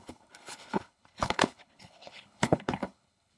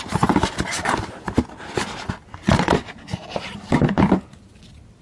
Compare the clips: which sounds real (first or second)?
second